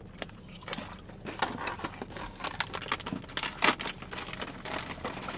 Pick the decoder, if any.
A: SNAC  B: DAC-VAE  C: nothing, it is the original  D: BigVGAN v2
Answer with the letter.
C